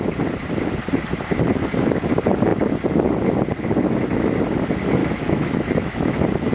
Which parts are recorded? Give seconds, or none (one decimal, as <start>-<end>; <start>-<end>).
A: 0.0-5.0; 6.1-6.5